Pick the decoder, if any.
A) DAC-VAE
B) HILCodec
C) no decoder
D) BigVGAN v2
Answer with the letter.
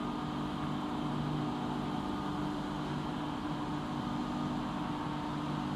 C